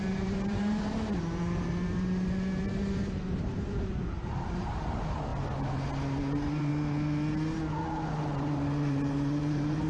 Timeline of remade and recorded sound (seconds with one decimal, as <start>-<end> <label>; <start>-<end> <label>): 0.0-5.3 remade; 5.3-6.2 recorded; 6.2-6.7 remade; 6.7-8.2 recorded; 8.2-9.9 remade